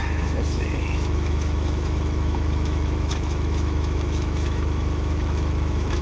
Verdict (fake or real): fake